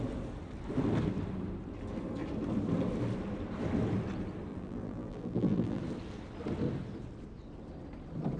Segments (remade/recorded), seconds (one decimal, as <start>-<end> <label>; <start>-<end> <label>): 0.0-4.5 recorded; 4.5-5.8 remade; 5.8-8.4 recorded